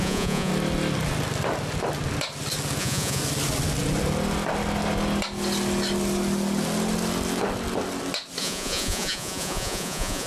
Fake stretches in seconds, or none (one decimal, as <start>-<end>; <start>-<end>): 0.0-0.5; 2.8-3.2; 8.4-10.3